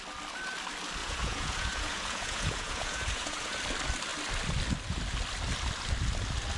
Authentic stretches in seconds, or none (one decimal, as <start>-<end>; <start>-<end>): 0.0-1.0; 3.6-6.6